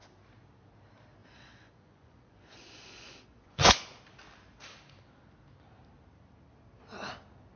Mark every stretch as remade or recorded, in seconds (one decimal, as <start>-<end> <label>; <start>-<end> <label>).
0.0-1.2 recorded; 1.2-4.0 remade; 4.0-7.6 recorded